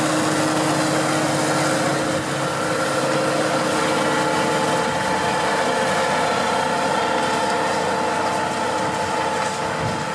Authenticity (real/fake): real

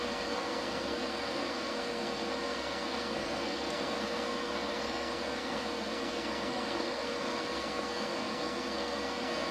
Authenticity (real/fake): fake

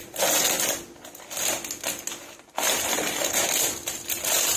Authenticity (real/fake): real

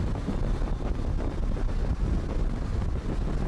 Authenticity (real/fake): real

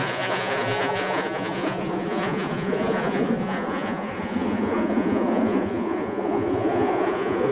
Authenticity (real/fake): fake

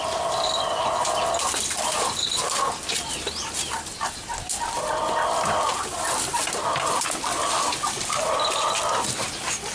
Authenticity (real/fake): real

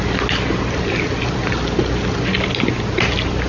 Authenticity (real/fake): real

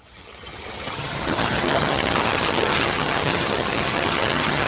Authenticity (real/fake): fake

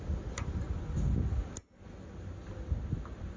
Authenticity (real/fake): real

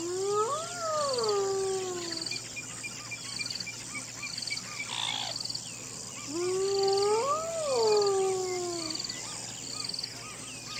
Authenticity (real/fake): real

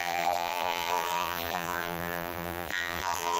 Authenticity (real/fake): fake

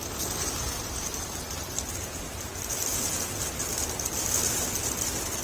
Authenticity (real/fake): real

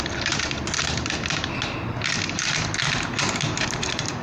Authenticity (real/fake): real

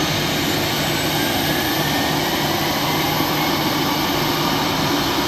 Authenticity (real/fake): real